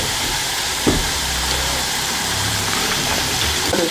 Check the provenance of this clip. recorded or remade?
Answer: remade